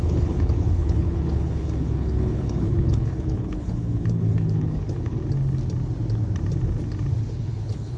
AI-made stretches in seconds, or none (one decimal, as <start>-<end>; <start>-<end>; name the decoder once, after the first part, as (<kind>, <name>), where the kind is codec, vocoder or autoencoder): 0.0-5.2 (codec, HILCodec); 7.3-8.0

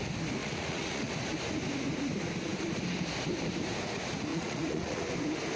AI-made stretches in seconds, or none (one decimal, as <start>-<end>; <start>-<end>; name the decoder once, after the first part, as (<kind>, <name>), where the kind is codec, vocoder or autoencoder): 0.4-1.1 (vocoder, Vocos); 4.3-5.1